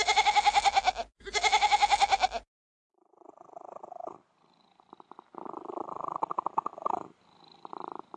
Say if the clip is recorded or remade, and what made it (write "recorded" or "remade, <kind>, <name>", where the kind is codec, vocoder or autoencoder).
remade, vocoder, BigVGAN v2